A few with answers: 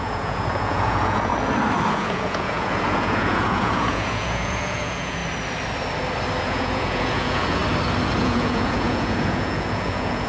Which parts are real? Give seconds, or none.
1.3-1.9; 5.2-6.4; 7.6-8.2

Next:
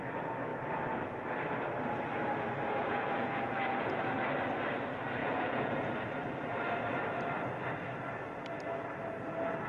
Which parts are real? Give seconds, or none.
0.0-2.8; 4.0-5.2; 5.9-9.7